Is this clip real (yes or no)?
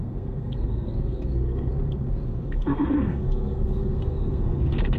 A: no